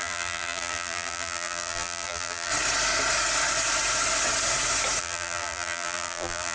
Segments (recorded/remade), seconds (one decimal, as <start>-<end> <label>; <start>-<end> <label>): 0.0-2.5 remade; 2.5-5.0 recorded; 5.0-6.5 remade